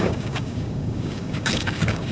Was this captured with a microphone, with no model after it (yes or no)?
no